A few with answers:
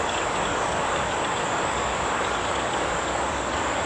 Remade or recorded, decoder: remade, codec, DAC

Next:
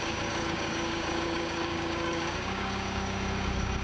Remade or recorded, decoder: remade, codec, DAC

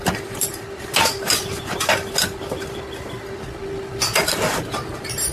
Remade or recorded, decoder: recorded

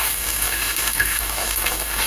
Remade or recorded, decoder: remade, codec, DAC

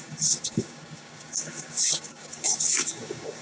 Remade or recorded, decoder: remade, codec, DAC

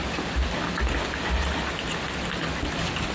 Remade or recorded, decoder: recorded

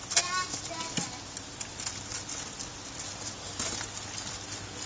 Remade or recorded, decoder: recorded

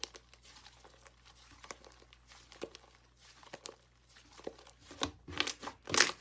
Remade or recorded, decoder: recorded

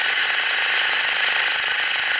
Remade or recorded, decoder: recorded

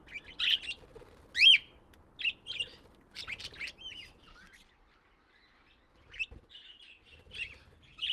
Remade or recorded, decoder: recorded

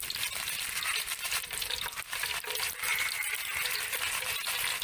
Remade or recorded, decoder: recorded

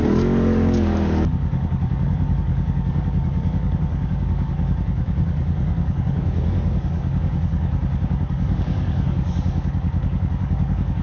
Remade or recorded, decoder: remade, codec, DAC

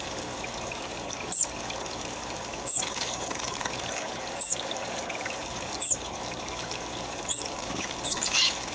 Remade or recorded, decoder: remade, codec, DAC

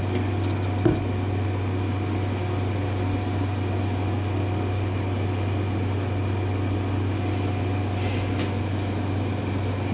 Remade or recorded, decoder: recorded